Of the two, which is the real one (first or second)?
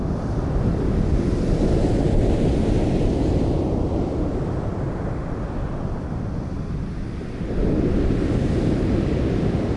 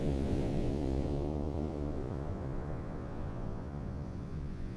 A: first